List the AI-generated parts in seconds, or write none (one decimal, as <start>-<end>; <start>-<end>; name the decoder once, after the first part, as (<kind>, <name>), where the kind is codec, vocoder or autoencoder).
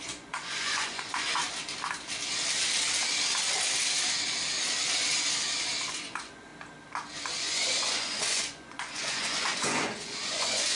0.0-1.4 (vocoder, Vocos); 5.9-6.5; 7.4-10.8